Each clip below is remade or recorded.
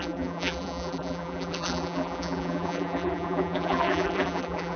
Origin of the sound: remade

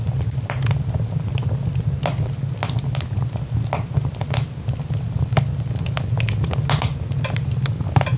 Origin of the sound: recorded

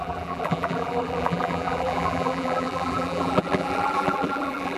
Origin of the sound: remade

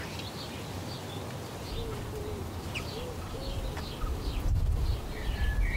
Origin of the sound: recorded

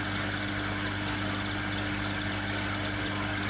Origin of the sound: remade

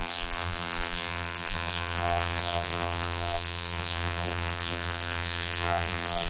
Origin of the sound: remade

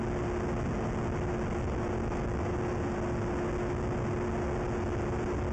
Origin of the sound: recorded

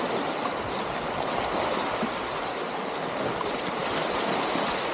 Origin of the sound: recorded